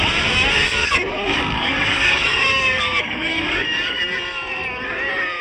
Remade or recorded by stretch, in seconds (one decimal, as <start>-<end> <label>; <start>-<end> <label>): 0.0-0.8 recorded; 0.8-4.0 remade; 4.0-5.4 recorded